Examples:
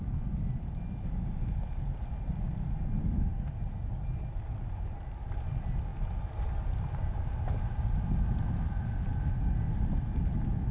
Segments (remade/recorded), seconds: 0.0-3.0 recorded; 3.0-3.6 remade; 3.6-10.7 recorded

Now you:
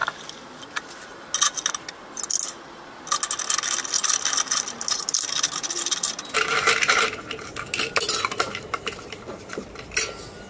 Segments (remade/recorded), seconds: 0.0-10.5 recorded

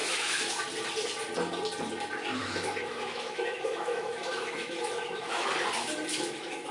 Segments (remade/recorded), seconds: 0.0-0.6 remade; 0.6-2.4 recorded; 2.4-5.5 remade; 5.5-6.1 recorded; 6.1-6.7 remade

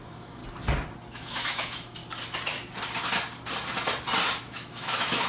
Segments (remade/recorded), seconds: 0.0-0.4 remade; 0.4-1.1 recorded; 1.1-2.0 remade; 2.0-4.4 recorded; 4.4-5.3 remade

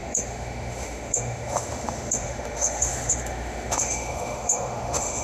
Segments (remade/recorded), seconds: 0.0-5.2 remade